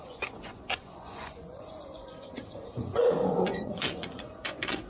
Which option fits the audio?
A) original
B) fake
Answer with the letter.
B